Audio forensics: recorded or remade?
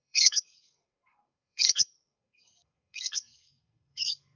remade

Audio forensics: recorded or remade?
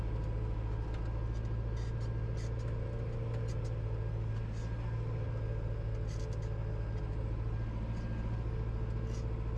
recorded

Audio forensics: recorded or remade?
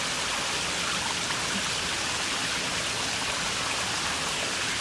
recorded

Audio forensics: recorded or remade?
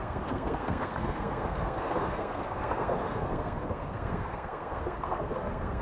remade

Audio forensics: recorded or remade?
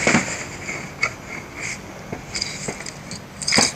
recorded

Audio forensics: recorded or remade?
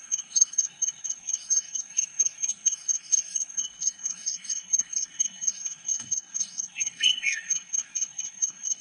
remade